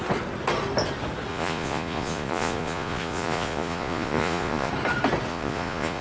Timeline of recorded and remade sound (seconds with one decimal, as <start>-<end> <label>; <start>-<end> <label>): 0.0-1.3 recorded; 1.3-4.7 remade; 4.7-5.3 recorded; 5.3-6.0 remade